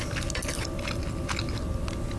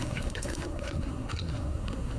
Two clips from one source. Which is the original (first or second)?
first